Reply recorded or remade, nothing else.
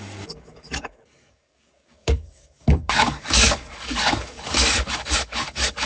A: remade